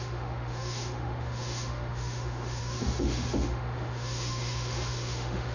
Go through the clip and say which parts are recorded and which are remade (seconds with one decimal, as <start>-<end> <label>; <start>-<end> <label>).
0.0-5.5 remade